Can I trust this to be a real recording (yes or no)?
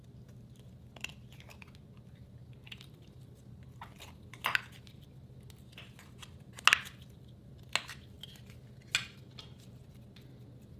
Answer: yes